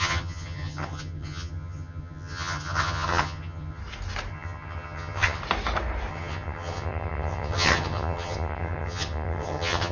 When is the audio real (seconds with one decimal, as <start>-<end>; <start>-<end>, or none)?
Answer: 3.8-4.3; 5.4-6.1